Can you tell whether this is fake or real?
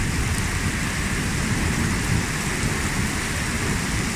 real